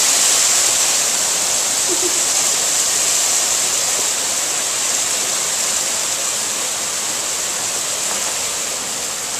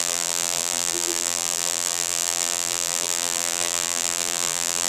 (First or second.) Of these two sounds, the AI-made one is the second